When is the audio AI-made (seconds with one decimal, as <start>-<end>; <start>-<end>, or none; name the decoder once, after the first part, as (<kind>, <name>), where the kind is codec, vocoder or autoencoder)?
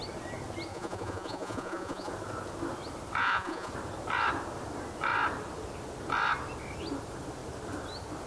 0.7-2.1 (vocoder, Vocos); 3.2-3.7